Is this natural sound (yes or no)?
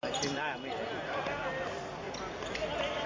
yes